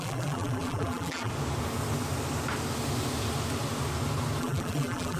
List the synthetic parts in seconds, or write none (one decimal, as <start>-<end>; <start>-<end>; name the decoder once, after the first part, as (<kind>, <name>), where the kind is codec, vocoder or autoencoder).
0.0-1.3 (vocoder, BigVGAN v2); 4.4-5.2

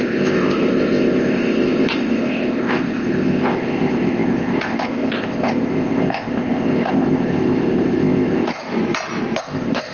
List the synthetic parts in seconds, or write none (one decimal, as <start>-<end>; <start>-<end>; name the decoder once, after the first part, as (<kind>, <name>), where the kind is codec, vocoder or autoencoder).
0.0-8.6 (codec, ZipCodec); 9.4-9.9

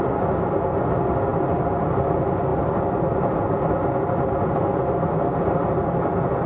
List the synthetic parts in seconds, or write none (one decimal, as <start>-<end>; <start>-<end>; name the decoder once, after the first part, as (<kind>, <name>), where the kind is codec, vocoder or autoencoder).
none

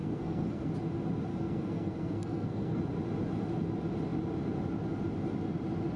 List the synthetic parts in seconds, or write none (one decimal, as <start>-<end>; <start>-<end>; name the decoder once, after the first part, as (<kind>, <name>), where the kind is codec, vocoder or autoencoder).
0.0-0.7 (codec, SNAC); 1.3-2.8

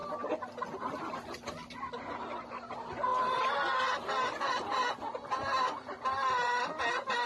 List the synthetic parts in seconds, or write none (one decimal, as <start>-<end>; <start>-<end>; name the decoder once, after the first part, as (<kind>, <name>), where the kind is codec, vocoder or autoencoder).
none

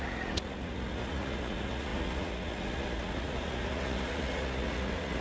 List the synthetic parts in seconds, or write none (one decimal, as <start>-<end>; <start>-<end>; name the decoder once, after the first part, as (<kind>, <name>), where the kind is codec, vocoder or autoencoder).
0.0-5.2 (vocoder, Vocos)